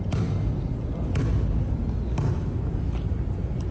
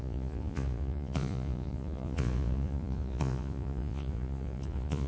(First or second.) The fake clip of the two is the second